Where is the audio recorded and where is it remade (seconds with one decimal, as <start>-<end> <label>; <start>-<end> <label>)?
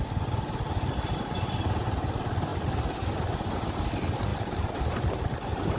0.0-4.3 recorded; 4.3-5.8 remade